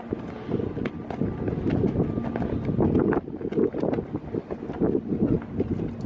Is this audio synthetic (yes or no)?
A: no